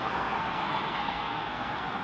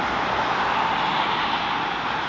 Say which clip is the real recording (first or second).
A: second